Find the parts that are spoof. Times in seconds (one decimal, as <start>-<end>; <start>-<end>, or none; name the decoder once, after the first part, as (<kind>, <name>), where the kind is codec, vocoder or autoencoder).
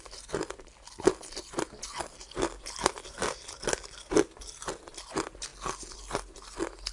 none